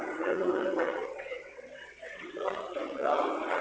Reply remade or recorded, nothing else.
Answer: remade